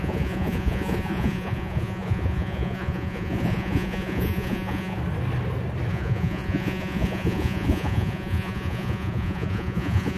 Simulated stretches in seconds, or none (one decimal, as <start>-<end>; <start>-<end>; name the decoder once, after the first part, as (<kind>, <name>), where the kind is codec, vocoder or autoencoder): 0.0-5.0 (vocoder, Vocos); 5.9-10.2